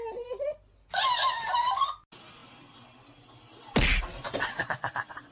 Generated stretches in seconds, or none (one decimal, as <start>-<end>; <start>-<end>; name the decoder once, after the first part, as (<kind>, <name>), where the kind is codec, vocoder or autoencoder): none

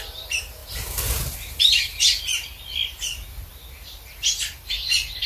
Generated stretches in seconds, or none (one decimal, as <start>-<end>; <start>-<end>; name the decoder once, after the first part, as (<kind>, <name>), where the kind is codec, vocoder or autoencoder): 0.0-0.6 (vocoder, BigVGAN v2); 1.6-2.5; 4.4-5.3

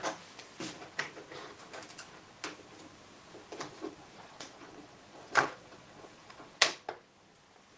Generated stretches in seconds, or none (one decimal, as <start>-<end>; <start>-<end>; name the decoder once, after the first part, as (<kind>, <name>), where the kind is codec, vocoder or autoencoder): 4.0-6.9 (vocoder, Vocos)

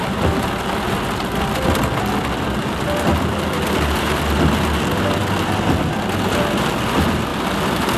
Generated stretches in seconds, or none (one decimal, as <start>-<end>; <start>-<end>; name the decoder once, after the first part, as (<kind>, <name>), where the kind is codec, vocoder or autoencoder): 3.1-4.1 (vocoder, BigVGAN v2); 7.3-8.0

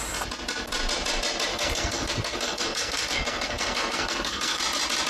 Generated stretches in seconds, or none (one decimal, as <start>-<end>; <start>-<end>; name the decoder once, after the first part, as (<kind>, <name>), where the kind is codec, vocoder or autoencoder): 1.5-4.6 (codec, SNAC)